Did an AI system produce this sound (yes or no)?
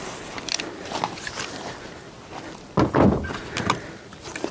no